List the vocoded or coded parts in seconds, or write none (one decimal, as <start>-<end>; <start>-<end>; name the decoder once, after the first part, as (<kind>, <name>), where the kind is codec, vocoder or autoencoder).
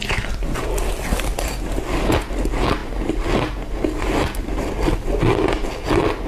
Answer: none